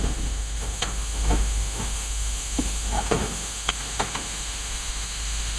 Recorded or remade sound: remade